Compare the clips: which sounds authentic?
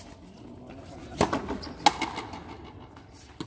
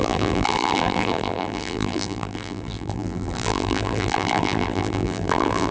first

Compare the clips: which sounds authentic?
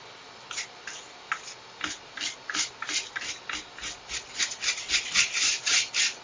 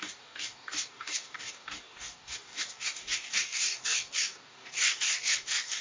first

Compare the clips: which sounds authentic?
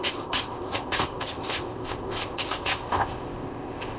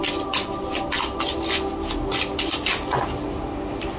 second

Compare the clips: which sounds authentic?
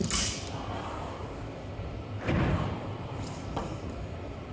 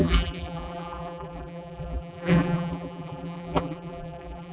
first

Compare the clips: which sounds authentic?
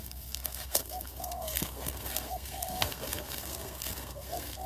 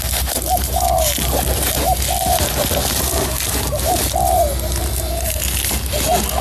second